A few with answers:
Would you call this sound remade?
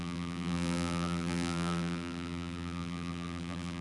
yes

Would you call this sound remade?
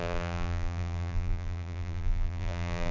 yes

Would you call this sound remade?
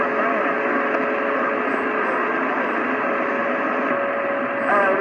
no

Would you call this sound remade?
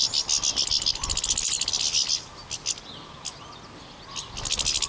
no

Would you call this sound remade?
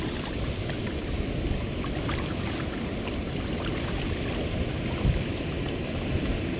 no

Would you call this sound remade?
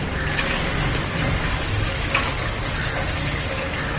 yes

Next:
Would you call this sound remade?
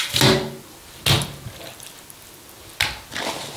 no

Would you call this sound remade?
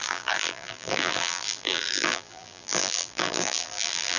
yes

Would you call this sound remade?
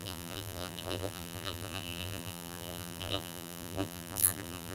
yes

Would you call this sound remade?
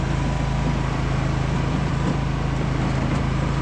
yes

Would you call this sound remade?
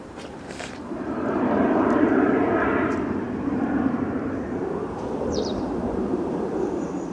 yes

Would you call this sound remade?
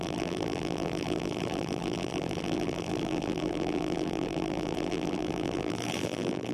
yes